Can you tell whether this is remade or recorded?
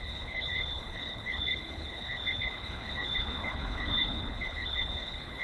remade